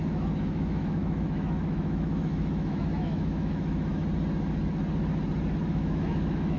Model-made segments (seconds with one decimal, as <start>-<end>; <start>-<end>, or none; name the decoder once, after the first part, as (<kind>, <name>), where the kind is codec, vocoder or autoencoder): 0.0-4.0 (autoencoder, DAC-VAE); 5.7-6.6